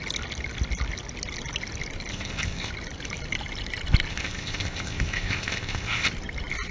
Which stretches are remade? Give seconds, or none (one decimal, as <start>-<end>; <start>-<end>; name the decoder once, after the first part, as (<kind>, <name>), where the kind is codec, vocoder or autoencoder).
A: 2.1-2.7 (codec, ZipCodec); 4.1-6.1